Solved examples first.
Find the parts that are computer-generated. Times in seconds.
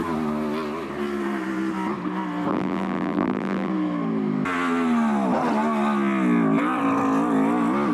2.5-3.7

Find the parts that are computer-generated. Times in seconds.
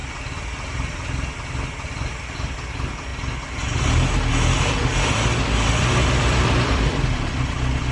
2.2-3.1; 6.2-7.9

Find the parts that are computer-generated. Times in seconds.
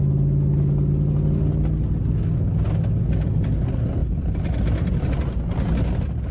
none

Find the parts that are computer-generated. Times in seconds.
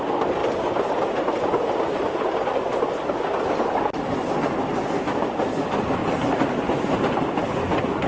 none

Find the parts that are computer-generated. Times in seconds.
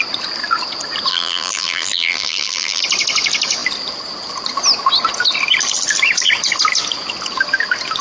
1.1-2.8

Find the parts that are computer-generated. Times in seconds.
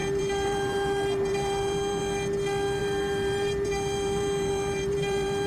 0.0-2.0; 2.8-5.5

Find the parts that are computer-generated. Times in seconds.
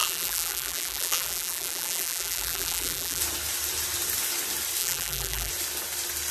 0.0-3.2; 4.8-5.5